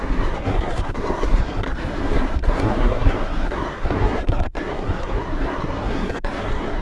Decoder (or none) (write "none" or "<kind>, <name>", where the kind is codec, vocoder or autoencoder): codec, SNAC